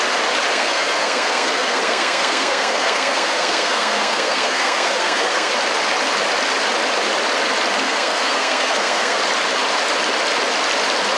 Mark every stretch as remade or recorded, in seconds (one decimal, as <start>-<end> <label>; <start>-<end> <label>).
0.0-0.5 recorded; 0.5-5.5 remade; 5.5-7.8 recorded; 7.8-9.2 remade; 9.2-11.2 recorded